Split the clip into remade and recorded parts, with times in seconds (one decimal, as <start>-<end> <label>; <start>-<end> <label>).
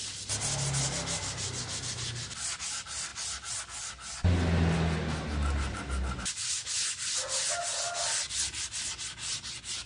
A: 0.0-9.9 recorded